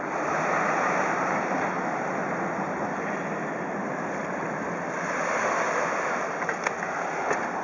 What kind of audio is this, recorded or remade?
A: recorded